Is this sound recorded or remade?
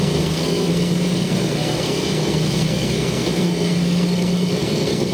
remade